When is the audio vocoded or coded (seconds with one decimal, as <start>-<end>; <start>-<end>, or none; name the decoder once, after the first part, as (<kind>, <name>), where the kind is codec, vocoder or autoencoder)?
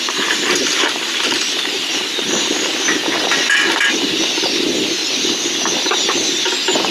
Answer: 0.0-5.0 (vocoder, BigVGAN v2)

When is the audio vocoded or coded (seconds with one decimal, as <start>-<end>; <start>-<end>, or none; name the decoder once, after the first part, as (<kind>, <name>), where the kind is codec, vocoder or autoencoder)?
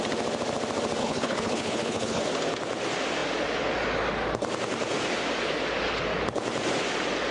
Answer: 1.0-2.2 (codec, HILCodec)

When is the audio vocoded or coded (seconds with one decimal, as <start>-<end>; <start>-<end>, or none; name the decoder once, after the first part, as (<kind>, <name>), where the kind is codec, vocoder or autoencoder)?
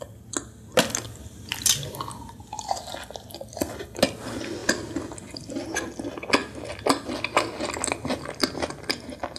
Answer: 4.6-5.7 (vocoder, BigVGAN v2)